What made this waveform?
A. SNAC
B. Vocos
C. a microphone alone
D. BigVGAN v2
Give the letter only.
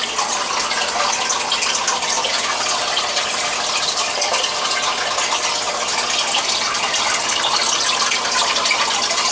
C